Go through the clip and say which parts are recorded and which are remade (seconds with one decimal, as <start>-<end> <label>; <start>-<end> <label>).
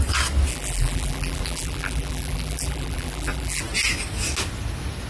0.0-0.5 recorded; 0.5-3.6 remade; 3.6-5.1 recorded